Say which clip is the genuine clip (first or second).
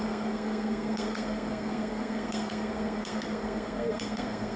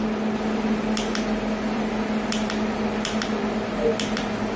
second